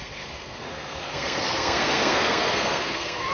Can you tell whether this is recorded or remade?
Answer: remade